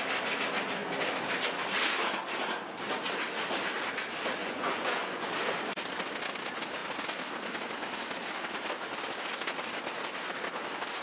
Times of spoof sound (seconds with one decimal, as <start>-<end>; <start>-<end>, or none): 4.4-5.3